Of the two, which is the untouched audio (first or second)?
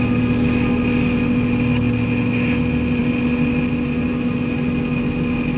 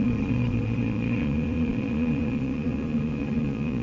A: first